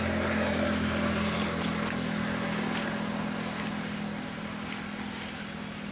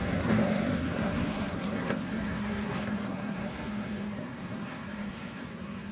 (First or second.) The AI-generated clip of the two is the second